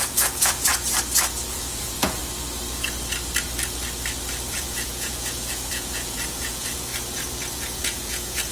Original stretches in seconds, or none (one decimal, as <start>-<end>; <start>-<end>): 0.7-1.5; 2.2-4.5; 6.9-7.5